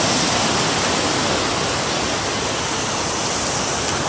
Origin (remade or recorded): recorded